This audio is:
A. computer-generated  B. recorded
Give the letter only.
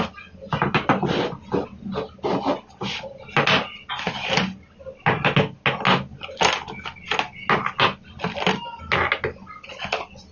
B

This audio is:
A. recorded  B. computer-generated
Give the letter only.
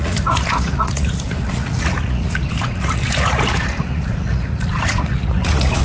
B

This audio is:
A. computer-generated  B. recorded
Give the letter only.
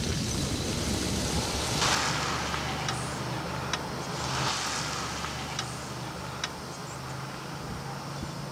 B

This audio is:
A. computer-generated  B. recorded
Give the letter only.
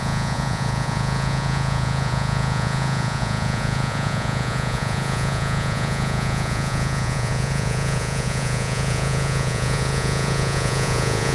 A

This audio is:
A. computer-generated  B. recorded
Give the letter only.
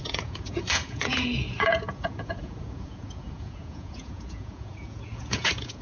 A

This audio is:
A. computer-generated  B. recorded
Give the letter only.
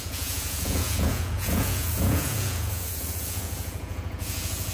A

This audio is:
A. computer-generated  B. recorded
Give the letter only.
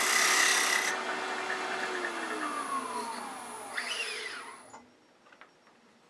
B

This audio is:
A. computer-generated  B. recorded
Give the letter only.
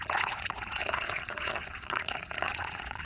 A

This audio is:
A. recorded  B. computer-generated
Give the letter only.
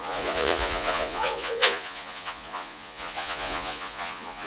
B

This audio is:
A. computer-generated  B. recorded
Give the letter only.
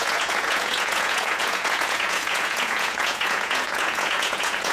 A